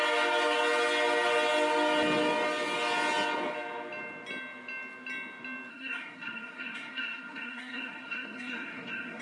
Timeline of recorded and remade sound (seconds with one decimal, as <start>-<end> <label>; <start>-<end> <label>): 0.0-5.7 recorded; 5.7-9.2 remade